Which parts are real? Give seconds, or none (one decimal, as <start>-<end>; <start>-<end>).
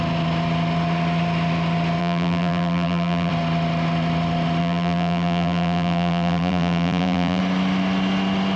0.0-2.0; 3.3-4.6; 7.4-8.6